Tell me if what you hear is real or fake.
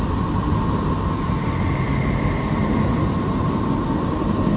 real